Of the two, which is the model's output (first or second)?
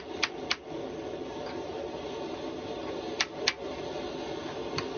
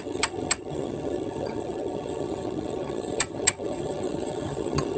second